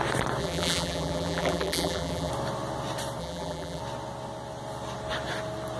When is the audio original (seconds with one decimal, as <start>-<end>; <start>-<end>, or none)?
0.0-0.4; 2.3-3.2; 3.8-5.8